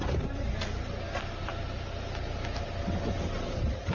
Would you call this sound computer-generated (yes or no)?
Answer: no